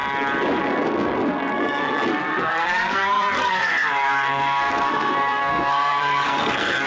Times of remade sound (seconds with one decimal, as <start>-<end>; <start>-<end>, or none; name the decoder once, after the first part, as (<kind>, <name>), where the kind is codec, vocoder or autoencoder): 0.6-6.9 (codec, SNAC)